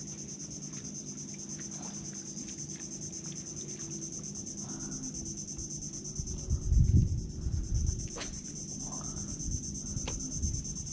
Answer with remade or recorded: recorded